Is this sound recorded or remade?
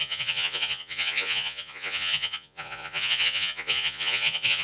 remade